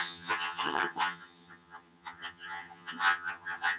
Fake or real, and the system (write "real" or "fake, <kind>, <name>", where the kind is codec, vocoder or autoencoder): fake, vocoder, HiFi-GAN